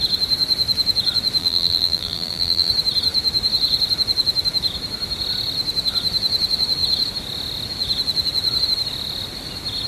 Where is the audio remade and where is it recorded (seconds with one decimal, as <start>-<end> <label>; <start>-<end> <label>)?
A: 0.0-1.4 recorded; 1.4-2.7 remade; 2.7-9.9 recorded

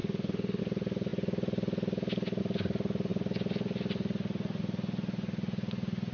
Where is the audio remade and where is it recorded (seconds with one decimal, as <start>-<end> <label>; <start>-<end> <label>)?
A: 0.0-0.6 remade; 0.6-6.1 recorded

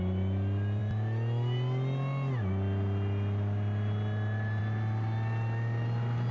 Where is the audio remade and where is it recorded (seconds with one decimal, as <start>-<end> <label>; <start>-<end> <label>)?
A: 0.0-6.3 recorded